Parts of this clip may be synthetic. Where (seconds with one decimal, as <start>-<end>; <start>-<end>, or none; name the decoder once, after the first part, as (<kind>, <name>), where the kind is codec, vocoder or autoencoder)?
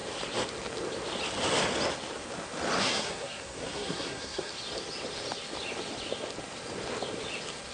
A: 2.8-4.5 (codec, SNAC)